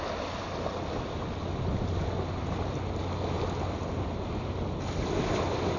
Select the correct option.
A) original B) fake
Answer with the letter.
A